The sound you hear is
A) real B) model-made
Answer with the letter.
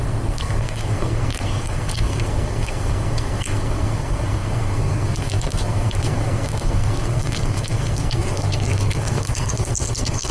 B